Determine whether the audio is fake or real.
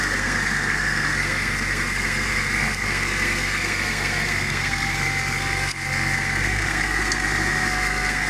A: fake